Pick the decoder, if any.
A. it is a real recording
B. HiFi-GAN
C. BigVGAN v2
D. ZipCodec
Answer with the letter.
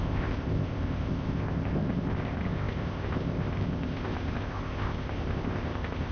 D